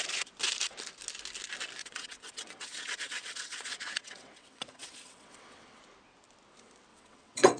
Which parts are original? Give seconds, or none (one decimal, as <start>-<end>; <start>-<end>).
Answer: 0.0-1.8; 5.8-6.9